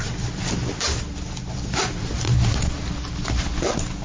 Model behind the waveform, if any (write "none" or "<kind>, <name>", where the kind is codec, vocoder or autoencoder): none